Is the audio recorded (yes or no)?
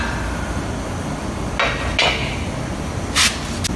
yes